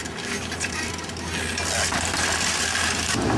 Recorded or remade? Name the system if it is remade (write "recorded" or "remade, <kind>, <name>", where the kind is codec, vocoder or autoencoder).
recorded